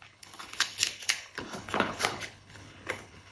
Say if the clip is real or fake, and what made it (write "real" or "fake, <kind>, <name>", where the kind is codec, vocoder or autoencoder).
fake, codec, HILCodec